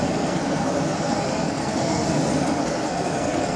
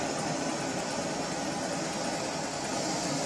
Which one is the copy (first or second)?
first